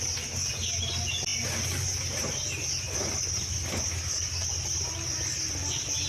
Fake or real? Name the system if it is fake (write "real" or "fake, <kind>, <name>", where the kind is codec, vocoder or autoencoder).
real